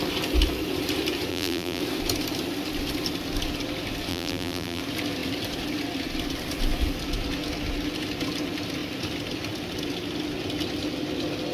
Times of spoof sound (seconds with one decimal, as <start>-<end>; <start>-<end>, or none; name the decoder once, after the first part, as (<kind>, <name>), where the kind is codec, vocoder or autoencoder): 1.3-1.8 (vocoder, BigVGAN v2); 4.1-4.8